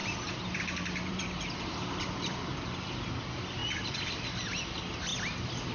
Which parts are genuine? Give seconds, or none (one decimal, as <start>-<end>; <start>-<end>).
3.1-3.6; 4.6-5.7